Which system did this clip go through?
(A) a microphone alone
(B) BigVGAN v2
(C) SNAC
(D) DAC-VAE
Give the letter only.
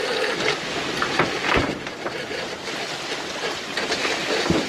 A